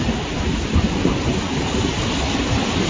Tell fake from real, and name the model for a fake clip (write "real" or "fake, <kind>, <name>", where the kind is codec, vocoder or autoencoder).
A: real